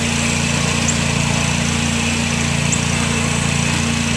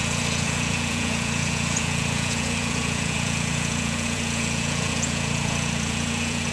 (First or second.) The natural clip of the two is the first